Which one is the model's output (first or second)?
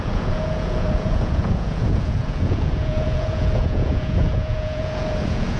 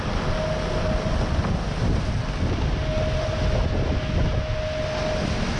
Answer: first